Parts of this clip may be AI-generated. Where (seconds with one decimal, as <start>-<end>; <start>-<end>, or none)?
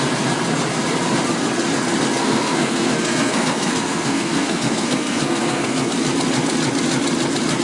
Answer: 2.2-5.9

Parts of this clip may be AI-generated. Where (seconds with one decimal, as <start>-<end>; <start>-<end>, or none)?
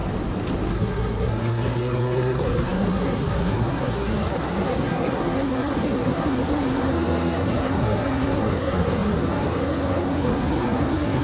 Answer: 0.7-11.2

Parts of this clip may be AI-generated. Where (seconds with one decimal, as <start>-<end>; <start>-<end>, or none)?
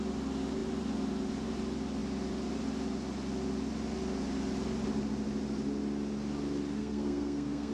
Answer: 6.8-7.7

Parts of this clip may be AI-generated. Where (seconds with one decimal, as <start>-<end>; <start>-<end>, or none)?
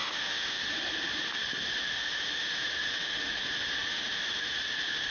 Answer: 0.0-0.6; 1.8-3.4; 3.9-4.5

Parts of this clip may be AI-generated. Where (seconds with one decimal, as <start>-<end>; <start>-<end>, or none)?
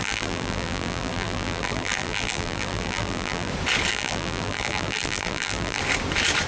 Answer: 0.0-3.5; 3.9-5.8